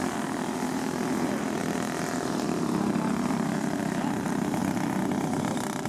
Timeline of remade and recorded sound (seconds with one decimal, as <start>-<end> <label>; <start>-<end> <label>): 0.0-1.6 remade; 1.6-3.3 recorded; 3.3-4.6 remade; 4.6-5.4 recorded; 5.4-5.9 remade